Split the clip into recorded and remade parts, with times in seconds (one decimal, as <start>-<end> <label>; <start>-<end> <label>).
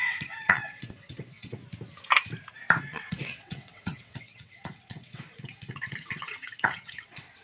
0.0-1.6 remade; 1.6-2.8 recorded; 2.8-7.4 remade